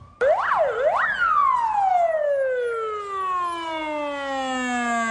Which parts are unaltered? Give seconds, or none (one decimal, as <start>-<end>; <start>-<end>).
0.0-5.1